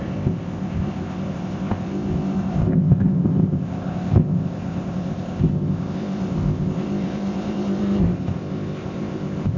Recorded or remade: remade